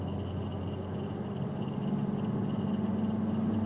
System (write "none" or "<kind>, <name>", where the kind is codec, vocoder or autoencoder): none